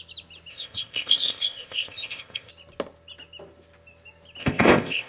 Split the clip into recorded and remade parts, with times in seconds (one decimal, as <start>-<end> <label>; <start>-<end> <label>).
0.0-0.5 recorded; 0.5-2.5 remade; 2.5-4.4 recorded; 4.4-5.1 remade